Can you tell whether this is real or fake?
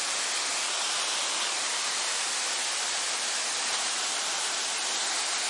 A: real